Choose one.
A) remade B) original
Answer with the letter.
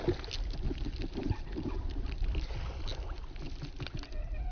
B